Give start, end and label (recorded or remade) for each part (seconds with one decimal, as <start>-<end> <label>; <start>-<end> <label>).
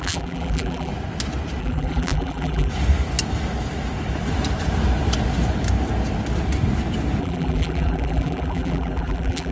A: 0.0-0.9 remade; 0.9-1.6 recorded; 1.6-2.7 remade; 2.7-7.2 recorded; 7.2-9.5 remade